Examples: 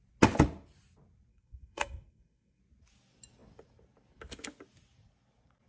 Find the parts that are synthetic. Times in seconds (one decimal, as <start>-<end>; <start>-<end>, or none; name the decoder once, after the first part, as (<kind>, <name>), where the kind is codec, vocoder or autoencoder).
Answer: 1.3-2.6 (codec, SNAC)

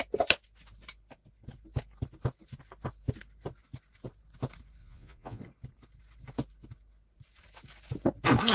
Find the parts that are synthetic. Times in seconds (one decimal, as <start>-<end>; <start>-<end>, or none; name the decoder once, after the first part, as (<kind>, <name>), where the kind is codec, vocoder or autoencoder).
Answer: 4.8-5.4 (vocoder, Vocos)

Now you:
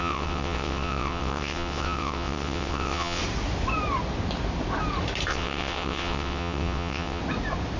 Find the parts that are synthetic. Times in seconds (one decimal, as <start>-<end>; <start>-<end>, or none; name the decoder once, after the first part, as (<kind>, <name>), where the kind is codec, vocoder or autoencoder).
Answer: 0.0-3.2 (vocoder, WaveNeXt); 5.3-7.2